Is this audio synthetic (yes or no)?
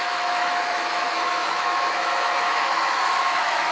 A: yes